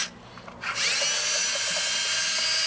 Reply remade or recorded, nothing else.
recorded